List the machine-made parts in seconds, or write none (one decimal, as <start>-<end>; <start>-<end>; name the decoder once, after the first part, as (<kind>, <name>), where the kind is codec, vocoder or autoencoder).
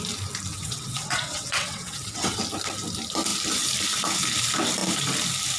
0.5-2.4 (vocoder, WaveNeXt)